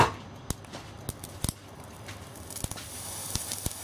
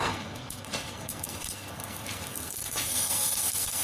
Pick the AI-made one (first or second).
second